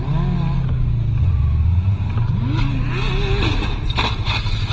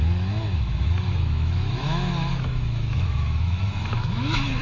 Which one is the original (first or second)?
first